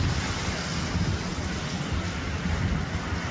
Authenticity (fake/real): real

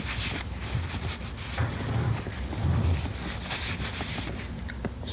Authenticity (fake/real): real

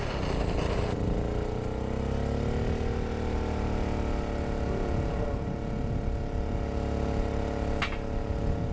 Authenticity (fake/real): real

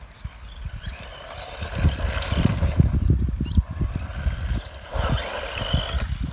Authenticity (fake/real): real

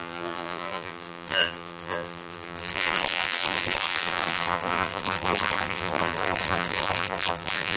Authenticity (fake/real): fake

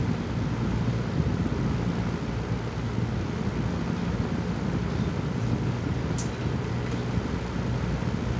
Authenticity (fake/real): real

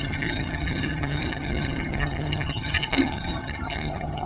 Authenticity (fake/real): fake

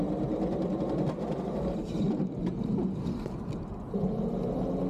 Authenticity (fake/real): real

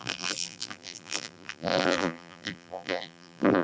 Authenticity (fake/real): fake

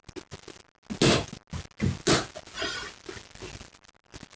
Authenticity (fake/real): real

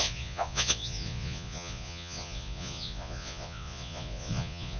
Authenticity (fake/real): fake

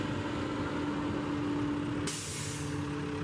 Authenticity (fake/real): real